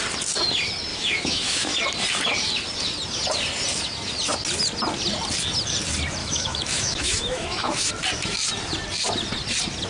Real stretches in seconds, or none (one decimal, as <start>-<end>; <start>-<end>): 0.0-0.9; 1.7-6.2; 7.9-9.9